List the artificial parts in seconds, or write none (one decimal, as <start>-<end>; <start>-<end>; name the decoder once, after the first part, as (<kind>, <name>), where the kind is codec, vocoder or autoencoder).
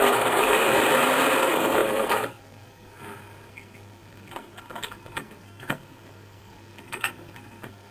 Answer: 0.0-0.8 (codec, SNAC); 1.4-7.9